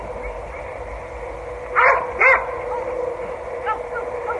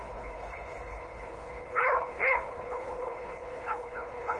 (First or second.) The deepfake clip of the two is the second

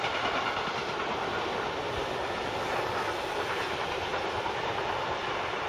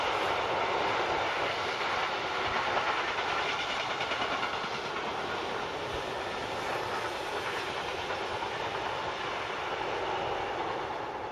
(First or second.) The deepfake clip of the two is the first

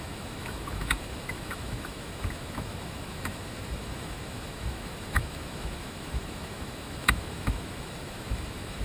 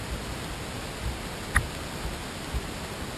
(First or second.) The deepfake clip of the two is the first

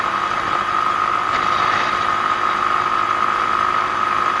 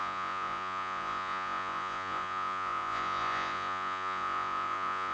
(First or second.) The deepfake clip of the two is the second